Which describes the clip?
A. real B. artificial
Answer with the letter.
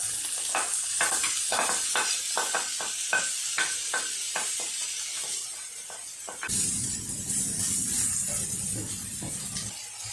A